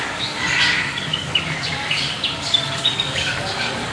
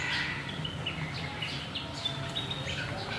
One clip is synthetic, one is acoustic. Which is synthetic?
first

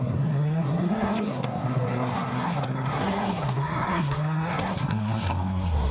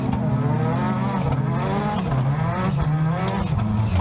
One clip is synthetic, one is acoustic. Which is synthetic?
first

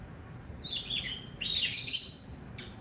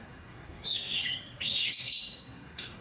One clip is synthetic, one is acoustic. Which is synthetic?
second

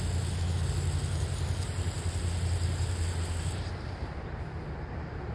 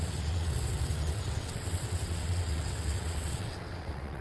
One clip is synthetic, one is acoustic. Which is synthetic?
second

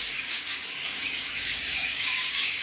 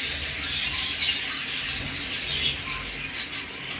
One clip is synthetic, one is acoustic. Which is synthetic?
first